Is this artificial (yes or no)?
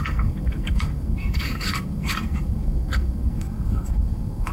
yes